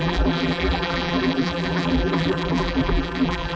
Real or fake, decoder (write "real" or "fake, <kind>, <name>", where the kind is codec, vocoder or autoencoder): fake, vocoder, BigVGAN v2